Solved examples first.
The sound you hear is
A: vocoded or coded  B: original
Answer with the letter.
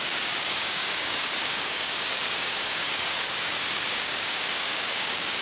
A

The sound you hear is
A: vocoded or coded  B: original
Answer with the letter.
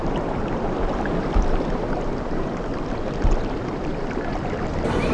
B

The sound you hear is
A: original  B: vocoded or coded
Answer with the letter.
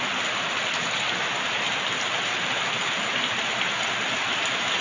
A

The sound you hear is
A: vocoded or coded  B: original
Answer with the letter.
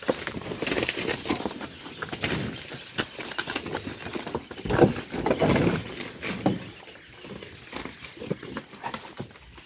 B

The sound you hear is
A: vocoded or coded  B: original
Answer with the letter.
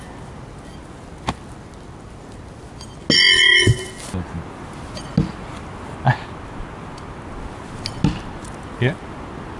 B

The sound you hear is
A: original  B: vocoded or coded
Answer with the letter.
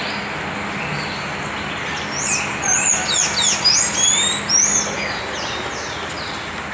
A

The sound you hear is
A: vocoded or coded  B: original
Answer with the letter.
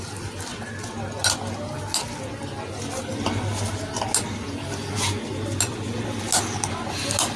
B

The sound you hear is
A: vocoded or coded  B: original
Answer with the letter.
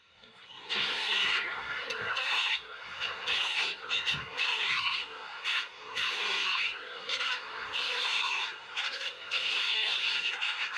A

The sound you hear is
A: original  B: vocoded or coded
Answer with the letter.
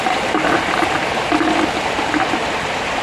A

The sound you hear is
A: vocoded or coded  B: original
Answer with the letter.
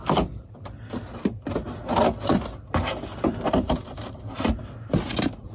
B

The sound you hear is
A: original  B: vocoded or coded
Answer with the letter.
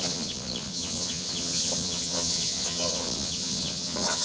B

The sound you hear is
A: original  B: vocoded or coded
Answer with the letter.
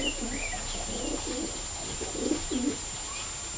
A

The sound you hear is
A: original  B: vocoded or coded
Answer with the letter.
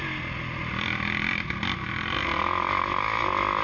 A